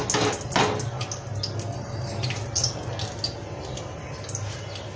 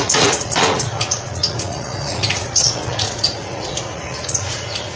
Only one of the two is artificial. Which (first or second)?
second